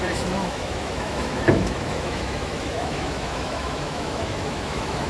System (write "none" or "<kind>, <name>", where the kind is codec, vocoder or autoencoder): autoencoder, DAC-VAE